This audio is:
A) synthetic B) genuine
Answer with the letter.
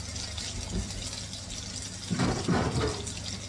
B